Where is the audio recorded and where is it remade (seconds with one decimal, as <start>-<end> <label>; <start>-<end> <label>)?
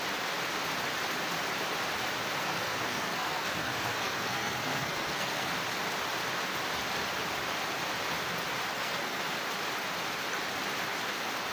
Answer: 0.0-2.4 recorded; 2.4-5.5 remade; 5.5-8.7 recorded; 8.7-9.2 remade; 9.2-11.5 recorded